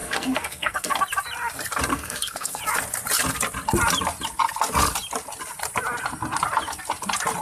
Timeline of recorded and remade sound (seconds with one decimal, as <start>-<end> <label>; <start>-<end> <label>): 0.0-1.0 remade; 1.0-1.9 recorded; 1.9-2.6 remade; 2.6-7.4 recorded